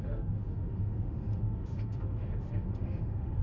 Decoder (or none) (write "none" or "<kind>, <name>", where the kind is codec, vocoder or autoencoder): autoencoder, DAC-VAE